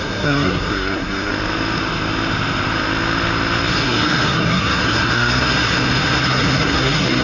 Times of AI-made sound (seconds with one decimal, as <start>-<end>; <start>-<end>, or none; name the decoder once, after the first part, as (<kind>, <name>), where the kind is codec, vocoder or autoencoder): 0.0-1.3 (codec, SNAC); 3.7-7.2